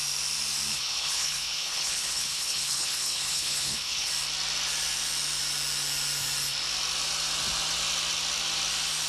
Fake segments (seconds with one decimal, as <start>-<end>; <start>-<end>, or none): 0.7-4.1